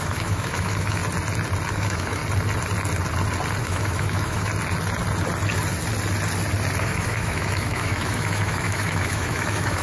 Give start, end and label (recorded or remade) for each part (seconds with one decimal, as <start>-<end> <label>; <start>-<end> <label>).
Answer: 0.0-1.0 remade; 1.0-1.7 recorded; 1.7-2.2 remade; 2.2-3.6 recorded; 3.6-4.5 remade; 4.5-6.8 recorded; 6.8-9.8 remade